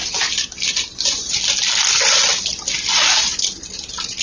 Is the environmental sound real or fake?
real